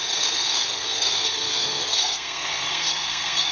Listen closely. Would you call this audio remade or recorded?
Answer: remade